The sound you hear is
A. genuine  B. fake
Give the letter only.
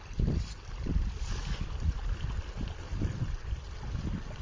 A